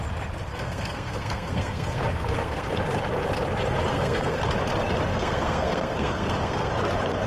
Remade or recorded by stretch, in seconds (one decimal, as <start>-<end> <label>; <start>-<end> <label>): 0.0-0.5 recorded; 0.5-2.7 remade; 2.7-3.9 recorded; 3.9-4.4 remade; 4.4-5.1 recorded; 5.1-6.7 remade; 6.7-7.3 recorded